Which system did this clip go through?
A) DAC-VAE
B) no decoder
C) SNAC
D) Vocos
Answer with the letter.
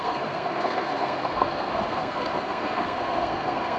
C